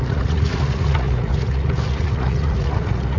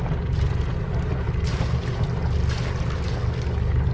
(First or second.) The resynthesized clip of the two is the first